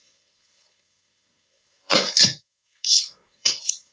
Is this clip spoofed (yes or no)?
yes